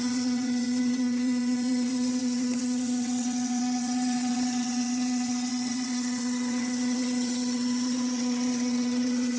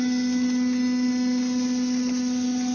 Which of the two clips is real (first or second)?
second